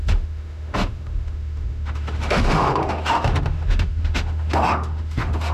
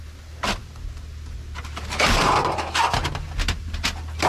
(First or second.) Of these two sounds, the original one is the second